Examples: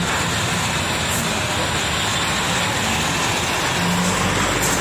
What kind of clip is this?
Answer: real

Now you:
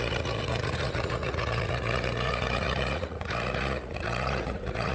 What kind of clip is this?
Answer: fake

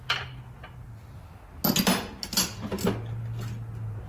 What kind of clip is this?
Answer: real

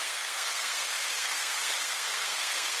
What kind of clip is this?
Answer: fake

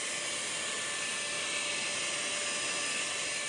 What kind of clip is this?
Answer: real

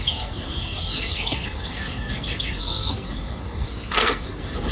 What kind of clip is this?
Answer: fake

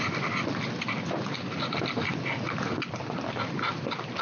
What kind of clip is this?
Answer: real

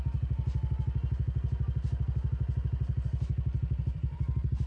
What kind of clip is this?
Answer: real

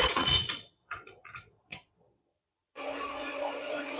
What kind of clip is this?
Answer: fake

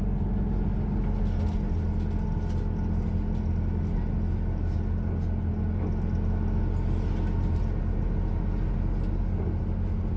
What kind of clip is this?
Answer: real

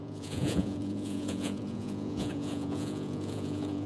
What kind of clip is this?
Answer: fake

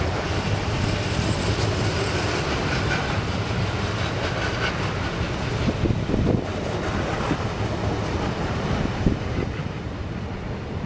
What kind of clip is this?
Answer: real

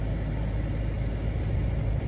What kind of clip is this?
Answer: real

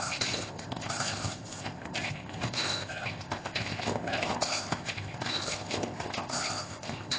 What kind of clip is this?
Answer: fake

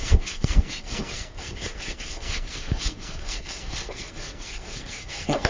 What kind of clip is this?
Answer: fake